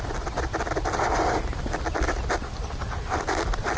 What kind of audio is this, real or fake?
real